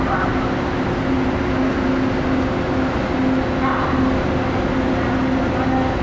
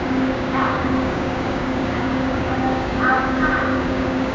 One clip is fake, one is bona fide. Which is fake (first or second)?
second